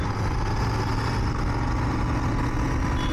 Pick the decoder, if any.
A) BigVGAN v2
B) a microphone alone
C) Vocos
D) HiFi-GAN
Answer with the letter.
B